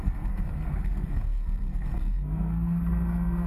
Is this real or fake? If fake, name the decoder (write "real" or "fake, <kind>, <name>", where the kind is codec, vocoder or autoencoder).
fake, codec, SNAC